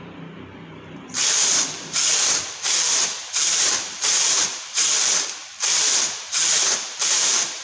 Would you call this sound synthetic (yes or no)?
yes